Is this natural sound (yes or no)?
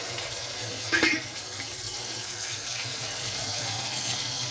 no